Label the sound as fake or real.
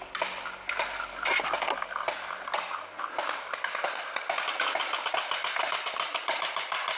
real